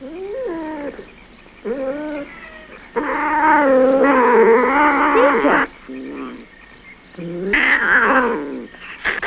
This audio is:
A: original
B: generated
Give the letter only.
A